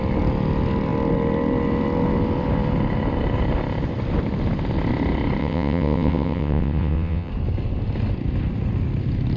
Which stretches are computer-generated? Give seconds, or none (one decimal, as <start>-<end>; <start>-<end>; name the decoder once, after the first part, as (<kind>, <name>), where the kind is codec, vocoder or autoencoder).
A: 5.4-7.3 (vocoder, WaveNeXt)